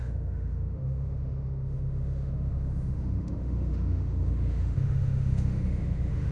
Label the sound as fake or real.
fake